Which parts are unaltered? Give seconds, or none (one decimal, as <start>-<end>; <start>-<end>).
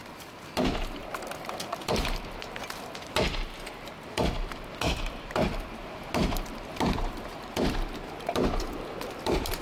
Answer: 2.6-3.7